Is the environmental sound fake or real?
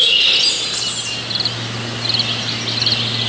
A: real